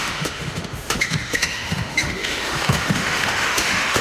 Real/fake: fake